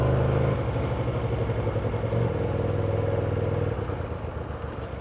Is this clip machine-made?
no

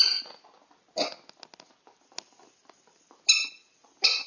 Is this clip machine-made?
no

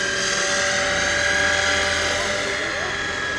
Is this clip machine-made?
no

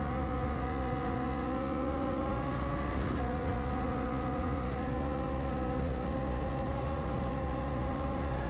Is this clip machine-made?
yes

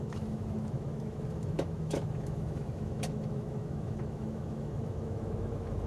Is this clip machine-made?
yes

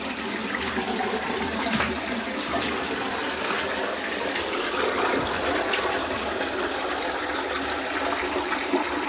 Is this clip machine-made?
yes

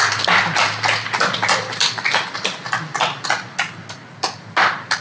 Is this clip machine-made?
no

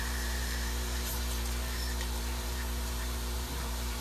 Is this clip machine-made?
yes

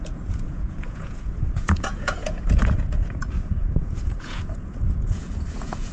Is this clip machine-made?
yes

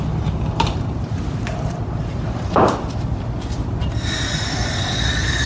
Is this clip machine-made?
no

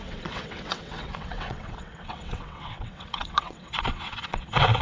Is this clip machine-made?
yes